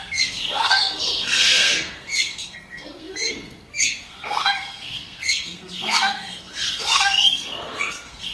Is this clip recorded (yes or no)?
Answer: no